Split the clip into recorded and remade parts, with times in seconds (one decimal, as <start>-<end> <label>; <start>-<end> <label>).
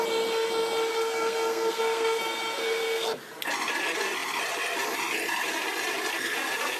0.0-0.9 recorded; 0.9-2.2 remade; 2.2-2.6 recorded; 2.6-3.2 remade; 3.2-6.8 recorded